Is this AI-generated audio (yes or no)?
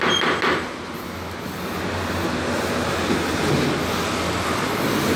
no